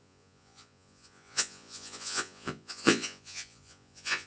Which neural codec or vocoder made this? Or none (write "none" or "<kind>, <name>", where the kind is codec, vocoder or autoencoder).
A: vocoder, Vocos